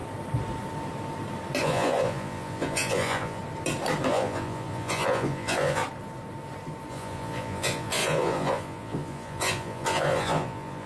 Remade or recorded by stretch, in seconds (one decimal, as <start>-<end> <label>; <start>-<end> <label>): 0.0-1.6 recorded; 1.6-3.4 remade; 3.4-4.1 recorded; 4.1-5.8 remade; 5.8-6.9 recorded; 6.9-10.9 remade